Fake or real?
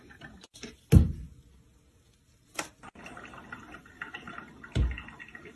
real